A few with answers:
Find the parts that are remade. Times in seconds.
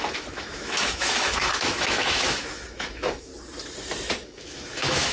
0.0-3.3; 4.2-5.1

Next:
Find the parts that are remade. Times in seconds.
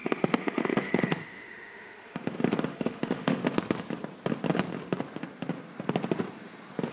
0.0-2.2; 2.7-3.4